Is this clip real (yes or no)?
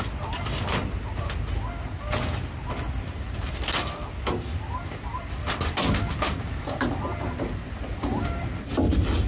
yes